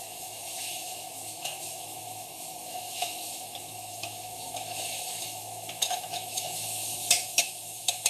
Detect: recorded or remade remade